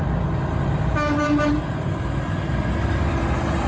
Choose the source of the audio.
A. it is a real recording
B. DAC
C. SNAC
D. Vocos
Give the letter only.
A